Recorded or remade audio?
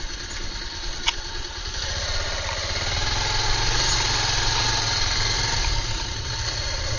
recorded